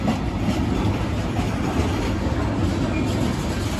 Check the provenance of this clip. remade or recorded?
recorded